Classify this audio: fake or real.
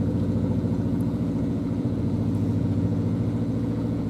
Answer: fake